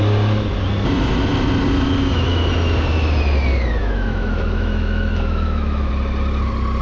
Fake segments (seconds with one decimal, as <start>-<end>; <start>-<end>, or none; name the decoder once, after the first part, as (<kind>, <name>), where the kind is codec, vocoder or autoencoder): 3.8-5.9 (autoencoder, DAC-VAE)